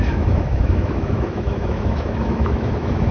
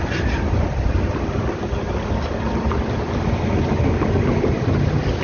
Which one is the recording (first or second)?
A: second